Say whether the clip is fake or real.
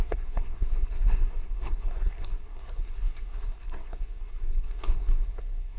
fake